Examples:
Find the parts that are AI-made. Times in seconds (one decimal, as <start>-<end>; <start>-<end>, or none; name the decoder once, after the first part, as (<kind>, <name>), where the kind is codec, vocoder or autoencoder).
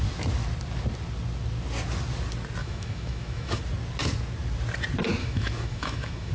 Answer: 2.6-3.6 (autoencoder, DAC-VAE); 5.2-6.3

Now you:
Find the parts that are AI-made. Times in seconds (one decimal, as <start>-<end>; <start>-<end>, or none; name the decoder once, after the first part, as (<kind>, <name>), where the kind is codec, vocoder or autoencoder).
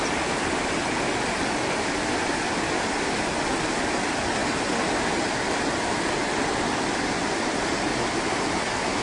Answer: none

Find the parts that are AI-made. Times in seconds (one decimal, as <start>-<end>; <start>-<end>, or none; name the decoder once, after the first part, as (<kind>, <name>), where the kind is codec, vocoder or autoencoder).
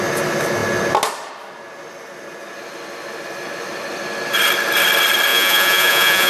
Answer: 5.3-6.3 (vocoder, Vocos)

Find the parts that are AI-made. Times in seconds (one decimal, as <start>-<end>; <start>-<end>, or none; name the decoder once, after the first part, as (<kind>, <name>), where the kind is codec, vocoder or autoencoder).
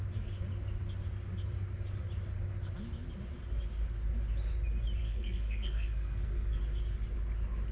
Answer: 5.0-6.6 (codec, SNAC)